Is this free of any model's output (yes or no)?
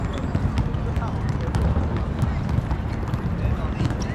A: yes